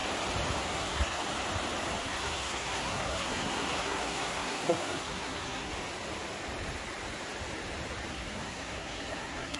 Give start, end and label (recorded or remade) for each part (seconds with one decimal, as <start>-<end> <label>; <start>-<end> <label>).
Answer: 0.0-0.6 recorded; 0.6-1.2 remade; 1.2-2.1 recorded; 2.1-5.7 remade; 5.7-8.1 recorded; 8.1-9.6 remade